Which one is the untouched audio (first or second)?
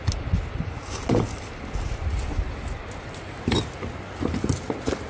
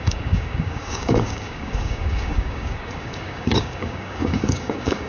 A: first